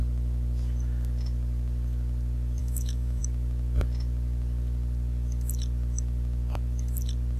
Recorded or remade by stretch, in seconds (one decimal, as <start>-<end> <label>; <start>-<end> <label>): 0.0-2.6 recorded; 2.6-3.2 remade; 3.2-7.4 recorded